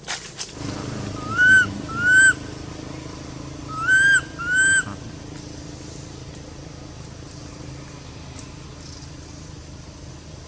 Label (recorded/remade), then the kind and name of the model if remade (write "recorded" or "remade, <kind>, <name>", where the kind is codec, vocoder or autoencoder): recorded